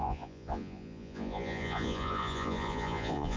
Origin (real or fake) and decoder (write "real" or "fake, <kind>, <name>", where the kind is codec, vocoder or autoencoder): fake, vocoder, Vocos